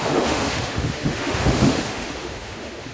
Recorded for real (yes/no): no